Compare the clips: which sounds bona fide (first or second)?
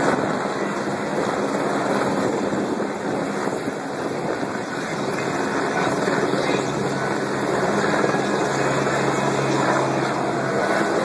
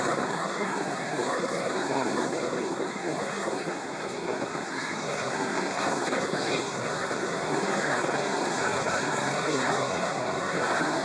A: first